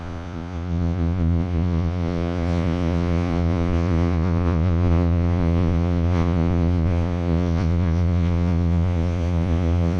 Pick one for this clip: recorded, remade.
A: remade